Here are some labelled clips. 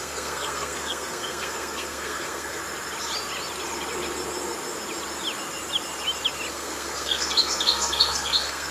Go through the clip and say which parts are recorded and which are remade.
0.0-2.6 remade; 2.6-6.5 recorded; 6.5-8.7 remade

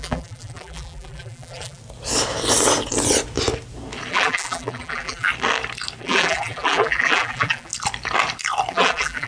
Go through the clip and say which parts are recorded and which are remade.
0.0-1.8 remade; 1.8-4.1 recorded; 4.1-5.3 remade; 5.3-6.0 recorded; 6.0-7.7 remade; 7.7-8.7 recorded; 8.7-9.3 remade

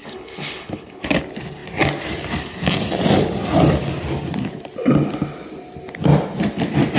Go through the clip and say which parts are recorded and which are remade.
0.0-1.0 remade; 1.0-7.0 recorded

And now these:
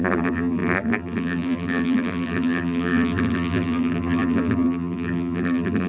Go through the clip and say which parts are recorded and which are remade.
0.0-5.9 remade

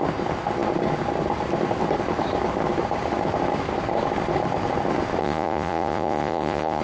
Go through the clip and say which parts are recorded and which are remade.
0.0-5.2 recorded; 5.2-6.8 remade

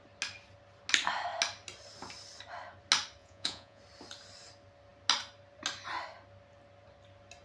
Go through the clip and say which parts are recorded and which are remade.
0.0-3.2 recorded; 3.2-3.8 remade; 3.8-7.4 recorded

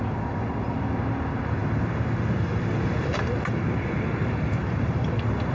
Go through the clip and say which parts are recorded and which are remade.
0.0-5.5 recorded